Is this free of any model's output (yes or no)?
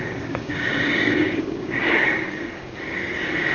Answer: no